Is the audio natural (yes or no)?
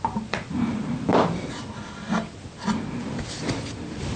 yes